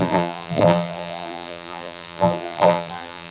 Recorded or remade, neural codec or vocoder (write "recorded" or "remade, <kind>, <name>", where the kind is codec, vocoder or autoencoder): remade, vocoder, BigVGAN v2